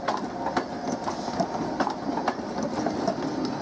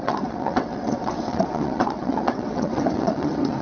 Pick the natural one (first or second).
first